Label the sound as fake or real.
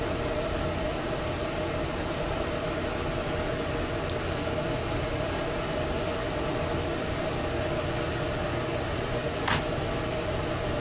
real